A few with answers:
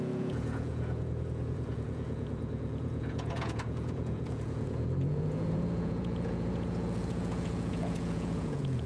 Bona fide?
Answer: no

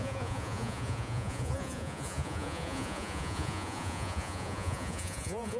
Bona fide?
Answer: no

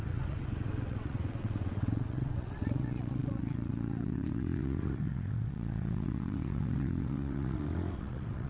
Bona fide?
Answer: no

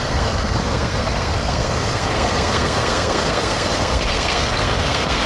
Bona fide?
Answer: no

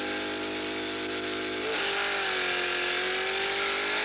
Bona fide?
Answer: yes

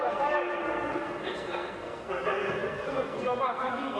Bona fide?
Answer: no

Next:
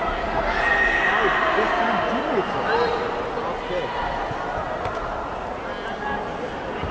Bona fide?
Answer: yes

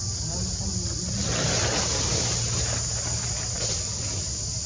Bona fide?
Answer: yes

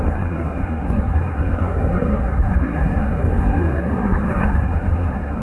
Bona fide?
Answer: no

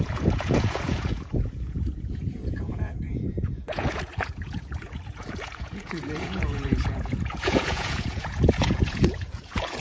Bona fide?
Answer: no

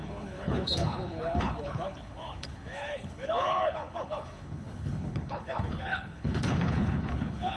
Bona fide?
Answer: no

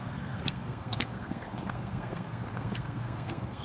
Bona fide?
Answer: no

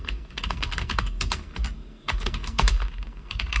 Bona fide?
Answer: no